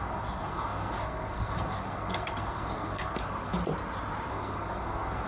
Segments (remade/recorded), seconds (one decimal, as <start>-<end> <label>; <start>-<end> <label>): 0.0-3.6 remade; 3.6-4.3 recorded; 4.3-5.3 remade